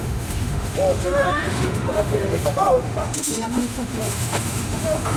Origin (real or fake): fake